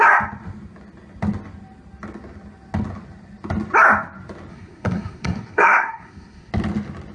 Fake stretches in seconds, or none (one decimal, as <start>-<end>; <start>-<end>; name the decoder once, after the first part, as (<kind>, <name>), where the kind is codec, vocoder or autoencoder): 4.5-6.5 (codec, SNAC)

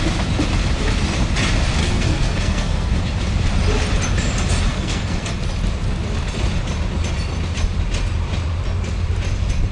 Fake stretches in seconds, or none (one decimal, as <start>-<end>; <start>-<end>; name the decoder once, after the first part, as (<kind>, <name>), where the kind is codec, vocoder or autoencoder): 1.8-3.0 (codec, SNAC); 4.7-5.3

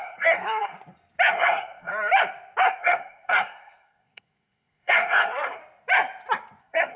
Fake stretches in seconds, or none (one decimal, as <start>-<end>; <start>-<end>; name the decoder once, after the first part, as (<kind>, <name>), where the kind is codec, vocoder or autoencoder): 0.0-0.7 (codec, SNAC); 1.3-1.9; 2.8-5.6; 6.6-7.0